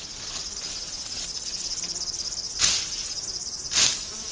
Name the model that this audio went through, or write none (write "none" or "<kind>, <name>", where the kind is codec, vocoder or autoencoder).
none